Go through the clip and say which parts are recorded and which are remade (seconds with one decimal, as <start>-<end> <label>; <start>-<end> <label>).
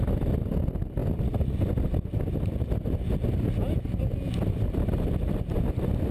0.0-6.1 recorded